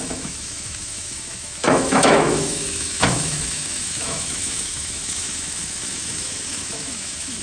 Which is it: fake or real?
fake